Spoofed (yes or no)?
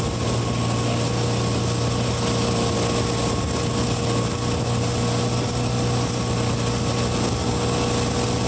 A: no